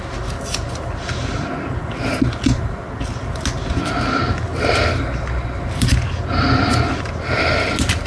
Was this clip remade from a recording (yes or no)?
no